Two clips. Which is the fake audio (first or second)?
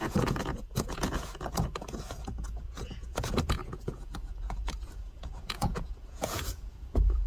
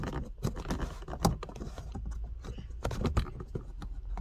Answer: first